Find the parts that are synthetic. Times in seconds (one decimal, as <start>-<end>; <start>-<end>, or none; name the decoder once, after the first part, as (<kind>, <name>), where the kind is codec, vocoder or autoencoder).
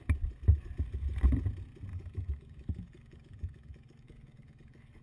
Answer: 1.9-5.0 (codec, DAC)